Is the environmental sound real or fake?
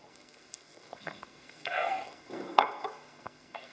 fake